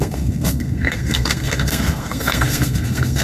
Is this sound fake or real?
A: fake